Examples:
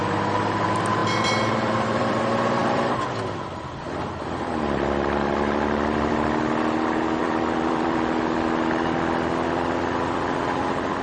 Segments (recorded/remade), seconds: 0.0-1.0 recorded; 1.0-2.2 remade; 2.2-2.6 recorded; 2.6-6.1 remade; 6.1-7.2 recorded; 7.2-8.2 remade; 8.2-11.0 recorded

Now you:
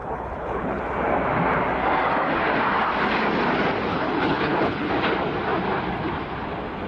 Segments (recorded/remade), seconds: 0.0-0.8 remade; 0.8-3.9 recorded; 3.9-4.9 remade; 4.9-6.9 recorded

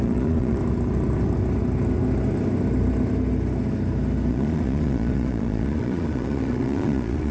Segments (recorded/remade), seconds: 0.0-0.6 remade; 0.6-4.3 recorded; 4.3-7.3 remade

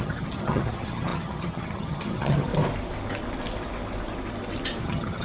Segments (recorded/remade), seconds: 0.0-2.5 remade; 2.5-4.8 recorded; 4.8-5.2 remade

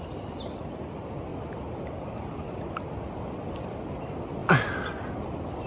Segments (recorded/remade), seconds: 0.0-5.7 recorded

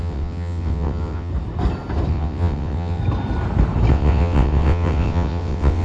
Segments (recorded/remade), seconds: 0.0-1.3 remade; 1.3-2.1 recorded; 2.1-3.0 remade; 3.0-3.9 recorded; 3.9-5.8 remade